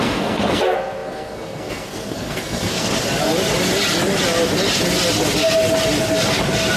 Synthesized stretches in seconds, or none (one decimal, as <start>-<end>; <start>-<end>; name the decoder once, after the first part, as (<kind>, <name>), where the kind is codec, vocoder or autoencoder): 0.0-2.9 (codec, SNAC)